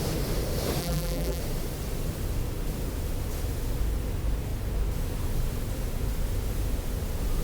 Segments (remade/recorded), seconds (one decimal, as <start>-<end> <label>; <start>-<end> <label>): 0.0-0.8 recorded; 0.8-1.4 remade; 1.4-7.4 recorded

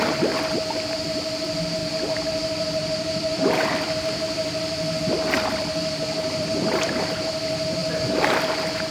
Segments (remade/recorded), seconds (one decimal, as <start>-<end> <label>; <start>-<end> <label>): 0.0-1.8 recorded; 1.8-6.9 remade; 6.9-7.8 recorded; 7.8-8.5 remade; 8.5-8.9 recorded

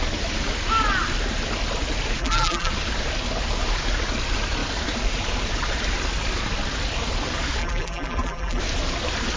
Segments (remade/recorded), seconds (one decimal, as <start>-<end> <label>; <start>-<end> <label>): 0.0-2.2 recorded; 2.2-2.7 remade; 2.7-7.6 recorded; 7.6-8.6 remade; 8.6-9.4 recorded